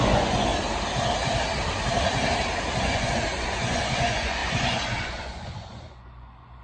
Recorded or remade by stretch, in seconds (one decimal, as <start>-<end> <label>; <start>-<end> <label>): 0.0-0.5 remade; 0.5-2.8 recorded; 2.8-6.6 remade

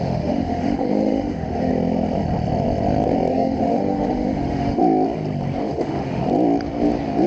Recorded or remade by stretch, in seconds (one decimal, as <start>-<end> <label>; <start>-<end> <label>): 0.0-1.7 remade; 1.7-3.3 recorded; 3.3-4.8 remade; 4.8-5.6 recorded; 5.6-6.2 remade; 6.2-7.3 recorded

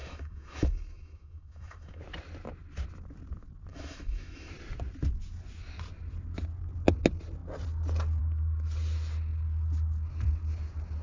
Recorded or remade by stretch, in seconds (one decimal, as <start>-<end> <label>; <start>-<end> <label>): 0.0-2.0 remade; 2.0-3.7 recorded; 3.7-4.5 remade; 4.5-11.0 recorded

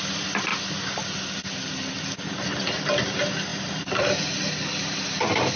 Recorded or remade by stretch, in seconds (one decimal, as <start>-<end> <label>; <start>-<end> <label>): 0.0-5.6 recorded